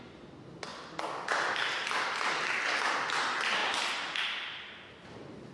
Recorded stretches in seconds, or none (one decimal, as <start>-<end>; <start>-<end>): 0.0-5.5